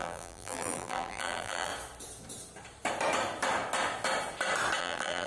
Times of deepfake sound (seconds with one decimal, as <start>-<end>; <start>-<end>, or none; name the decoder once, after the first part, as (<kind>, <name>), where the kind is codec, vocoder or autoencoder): 0.0-1.7 (vocoder, BigVGAN v2); 4.8-5.3